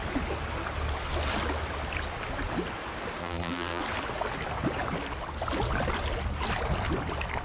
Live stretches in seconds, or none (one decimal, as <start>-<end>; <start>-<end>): 0.0-3.2; 3.8-7.4